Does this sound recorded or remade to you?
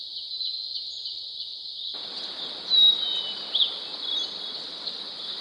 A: recorded